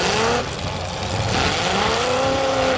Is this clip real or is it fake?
real